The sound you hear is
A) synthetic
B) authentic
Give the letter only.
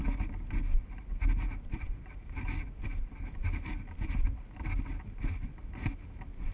B